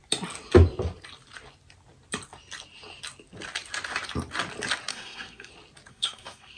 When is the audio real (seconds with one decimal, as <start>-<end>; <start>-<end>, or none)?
0.0-4.9; 5.5-5.9